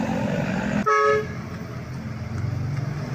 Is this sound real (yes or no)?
yes